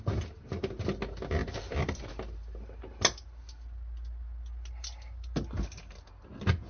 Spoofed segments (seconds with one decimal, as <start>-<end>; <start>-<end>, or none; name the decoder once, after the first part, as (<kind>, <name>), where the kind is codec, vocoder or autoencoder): 1.4-2.1 (vocoder, BigVGAN v2)